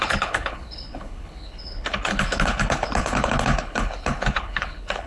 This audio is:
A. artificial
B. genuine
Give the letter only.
A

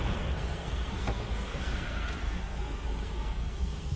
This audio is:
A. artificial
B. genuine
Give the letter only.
A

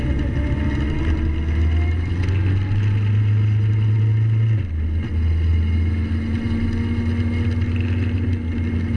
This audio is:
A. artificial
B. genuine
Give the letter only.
B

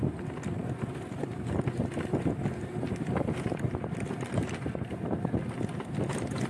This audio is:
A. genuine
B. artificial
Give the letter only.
A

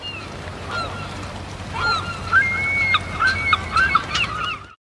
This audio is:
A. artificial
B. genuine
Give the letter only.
B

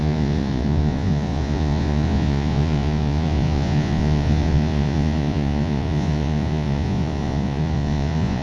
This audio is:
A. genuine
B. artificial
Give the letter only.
B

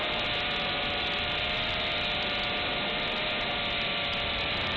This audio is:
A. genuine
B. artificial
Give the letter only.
A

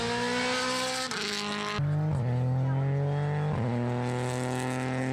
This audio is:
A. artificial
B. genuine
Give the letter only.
B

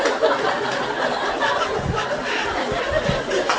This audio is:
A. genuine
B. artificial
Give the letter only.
A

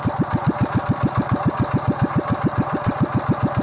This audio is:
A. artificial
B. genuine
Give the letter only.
B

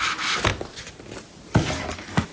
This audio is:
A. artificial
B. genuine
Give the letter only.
B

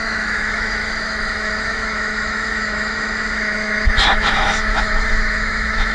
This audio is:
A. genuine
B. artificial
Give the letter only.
B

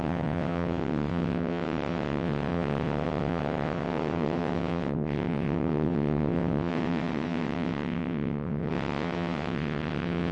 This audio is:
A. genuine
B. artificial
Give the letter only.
B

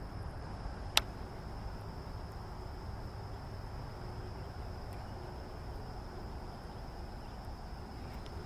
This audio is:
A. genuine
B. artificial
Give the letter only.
A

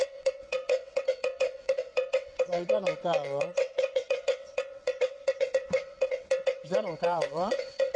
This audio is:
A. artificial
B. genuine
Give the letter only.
A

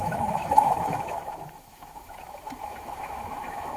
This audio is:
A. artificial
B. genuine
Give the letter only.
A